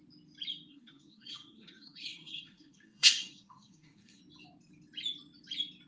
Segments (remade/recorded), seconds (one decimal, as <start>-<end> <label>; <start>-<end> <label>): 0.0-0.7 recorded; 0.7-4.2 remade; 4.2-5.9 recorded